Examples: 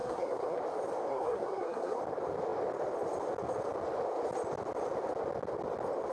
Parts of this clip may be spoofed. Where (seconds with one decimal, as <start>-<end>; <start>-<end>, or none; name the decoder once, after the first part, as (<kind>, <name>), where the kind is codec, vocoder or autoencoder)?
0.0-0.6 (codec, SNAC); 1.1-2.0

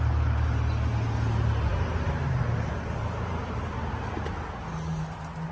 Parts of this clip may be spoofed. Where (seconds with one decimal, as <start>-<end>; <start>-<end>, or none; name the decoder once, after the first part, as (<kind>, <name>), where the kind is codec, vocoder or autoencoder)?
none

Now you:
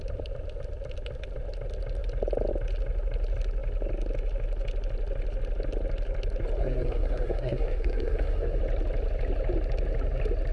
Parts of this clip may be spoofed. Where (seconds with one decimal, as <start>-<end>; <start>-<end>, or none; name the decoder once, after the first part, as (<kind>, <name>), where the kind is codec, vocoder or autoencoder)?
6.6-8.6 (codec, SNAC)